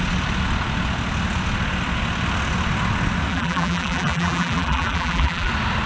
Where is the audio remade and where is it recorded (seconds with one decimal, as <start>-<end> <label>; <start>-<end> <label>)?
0.0-3.3 recorded; 3.3-5.5 remade; 5.5-5.9 recorded